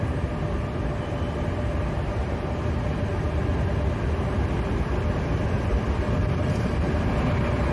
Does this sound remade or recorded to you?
recorded